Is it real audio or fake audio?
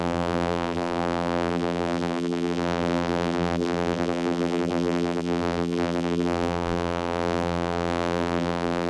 fake